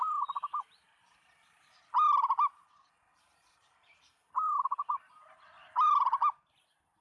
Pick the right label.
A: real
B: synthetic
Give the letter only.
A